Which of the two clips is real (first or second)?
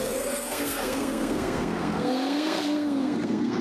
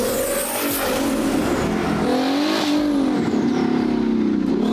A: second